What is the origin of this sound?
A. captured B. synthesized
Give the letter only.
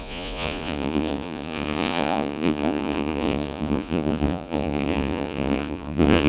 B